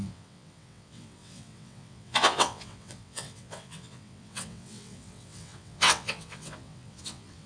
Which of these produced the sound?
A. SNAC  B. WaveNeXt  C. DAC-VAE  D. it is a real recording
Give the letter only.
B